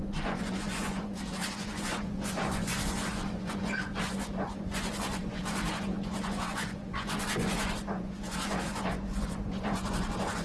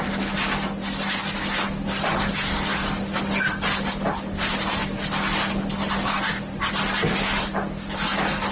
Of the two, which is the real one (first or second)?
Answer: second